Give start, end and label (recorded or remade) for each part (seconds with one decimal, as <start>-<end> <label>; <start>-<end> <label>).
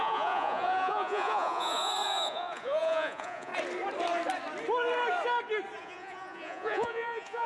0.0-3.5 remade; 3.5-5.8 recorded; 5.8-7.5 remade